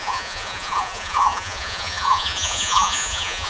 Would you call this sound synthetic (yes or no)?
yes